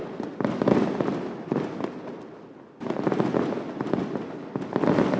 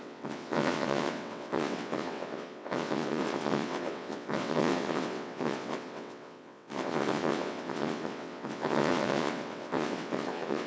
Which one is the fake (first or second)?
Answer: second